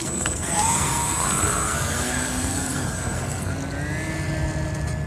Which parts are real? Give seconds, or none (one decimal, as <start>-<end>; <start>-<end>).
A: 3.5-5.1